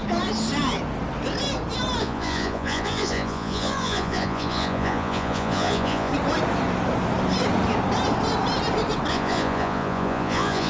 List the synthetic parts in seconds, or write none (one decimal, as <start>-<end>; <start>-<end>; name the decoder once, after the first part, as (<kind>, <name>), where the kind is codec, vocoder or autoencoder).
2.0-6.1 (vocoder, Vocos); 9.1-10.7